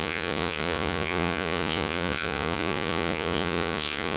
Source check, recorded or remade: remade